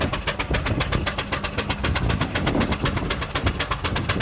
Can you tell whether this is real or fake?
real